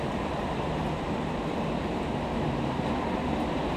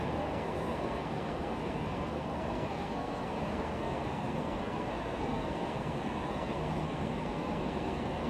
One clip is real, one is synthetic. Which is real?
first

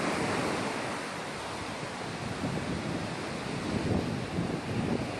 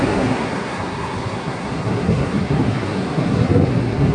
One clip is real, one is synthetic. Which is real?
first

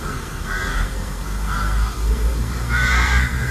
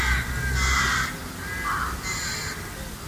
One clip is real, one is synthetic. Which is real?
second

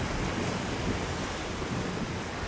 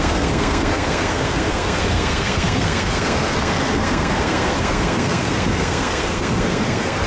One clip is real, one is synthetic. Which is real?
first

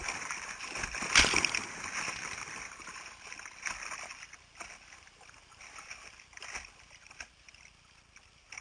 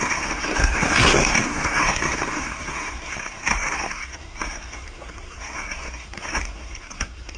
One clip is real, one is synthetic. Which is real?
first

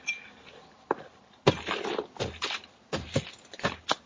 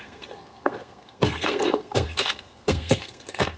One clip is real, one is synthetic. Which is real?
first